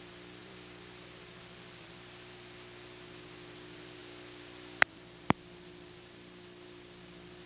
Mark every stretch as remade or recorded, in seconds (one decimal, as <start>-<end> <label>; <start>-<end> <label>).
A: 0.0-7.5 recorded

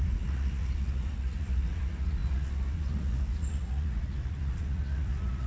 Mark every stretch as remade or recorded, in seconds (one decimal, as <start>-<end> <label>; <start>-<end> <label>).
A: 0.0-5.5 remade

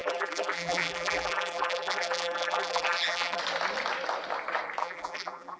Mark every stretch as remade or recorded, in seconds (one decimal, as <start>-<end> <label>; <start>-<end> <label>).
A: 0.0-3.4 remade; 3.4-4.8 recorded; 4.8-5.6 remade

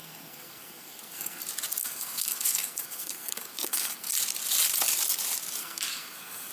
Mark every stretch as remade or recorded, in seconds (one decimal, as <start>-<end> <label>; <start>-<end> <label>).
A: 0.0-1.4 remade; 1.4-1.8 recorded; 1.8-4.1 remade; 4.1-5.6 recorded; 5.6-6.5 remade

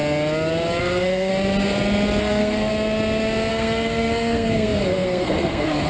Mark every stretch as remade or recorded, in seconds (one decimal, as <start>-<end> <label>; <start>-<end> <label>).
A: 0.0-0.8 recorded; 0.8-1.3 remade; 1.3-2.2 recorded; 2.2-2.7 remade; 2.7-3.5 recorded; 3.5-5.9 remade